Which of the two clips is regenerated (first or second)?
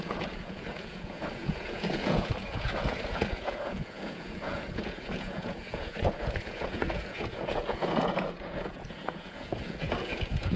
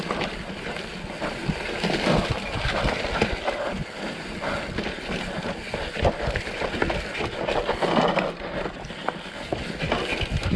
first